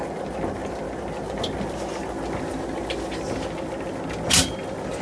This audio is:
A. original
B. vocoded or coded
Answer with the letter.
A